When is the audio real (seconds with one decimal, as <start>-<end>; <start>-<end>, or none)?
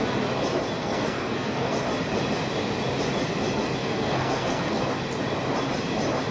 0.0-0.8; 1.8-3.8; 4.8-6.3